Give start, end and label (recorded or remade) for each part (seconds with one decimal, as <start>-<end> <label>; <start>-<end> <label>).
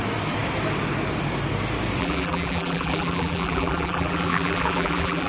0.0-2.0 recorded; 2.0-5.3 remade